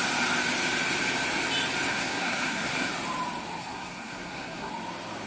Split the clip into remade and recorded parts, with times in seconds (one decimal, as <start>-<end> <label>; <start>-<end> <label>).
0.0-1.9 recorded; 1.9-2.9 remade; 2.9-3.6 recorded; 3.6-4.7 remade; 4.7-5.3 recorded